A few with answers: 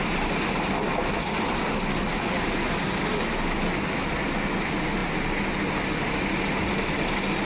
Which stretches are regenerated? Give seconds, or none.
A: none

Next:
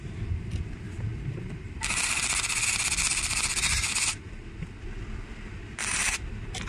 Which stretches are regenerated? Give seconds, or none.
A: none

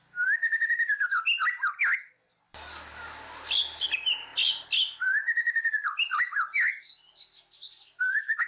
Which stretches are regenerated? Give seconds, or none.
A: none

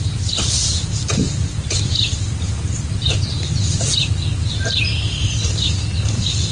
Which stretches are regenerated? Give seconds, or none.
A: 2.1-5.8 (vocoder, BigVGAN v2)

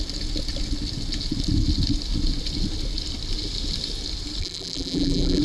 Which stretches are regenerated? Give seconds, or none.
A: 4.4-5.4 (vocoder, BigVGAN v2)

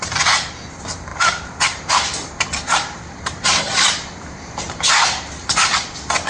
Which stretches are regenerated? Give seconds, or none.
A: 1.1-4.9 (vocoder, BigVGAN v2)

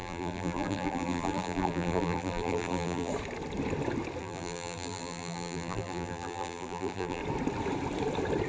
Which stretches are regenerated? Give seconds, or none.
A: 0.0-3.1 (vocoder, BigVGAN v2); 4.2-7.2